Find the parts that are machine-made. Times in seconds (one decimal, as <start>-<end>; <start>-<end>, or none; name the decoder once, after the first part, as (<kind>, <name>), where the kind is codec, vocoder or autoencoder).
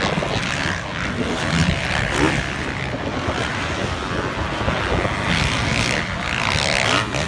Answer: none